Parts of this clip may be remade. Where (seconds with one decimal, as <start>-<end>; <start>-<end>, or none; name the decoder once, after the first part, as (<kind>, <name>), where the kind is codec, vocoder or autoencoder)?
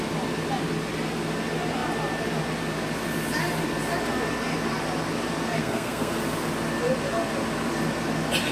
5.6-6.2 (codec, SNAC)